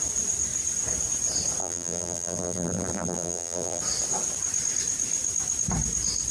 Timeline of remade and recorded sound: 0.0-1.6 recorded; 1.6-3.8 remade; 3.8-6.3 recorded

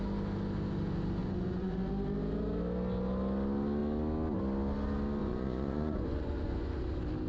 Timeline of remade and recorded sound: 0.0-1.2 recorded; 1.2-1.9 remade; 1.9-5.2 recorded; 5.2-6.8 remade; 6.8-7.3 recorded

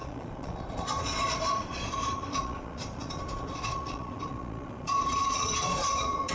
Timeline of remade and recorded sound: 0.0-6.3 remade

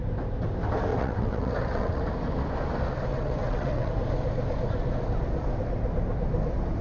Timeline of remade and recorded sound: 0.0-0.9 recorded; 0.9-2.0 remade; 2.0-3.1 recorded; 3.1-3.9 remade; 3.9-6.8 recorded

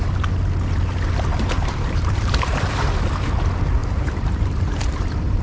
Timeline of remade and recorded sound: 0.0-1.3 recorded; 1.3-2.9 remade; 2.9-3.8 recorded; 3.8-5.4 remade

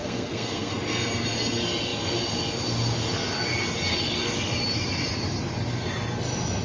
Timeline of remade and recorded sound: 0.0-0.7 remade; 0.7-6.6 recorded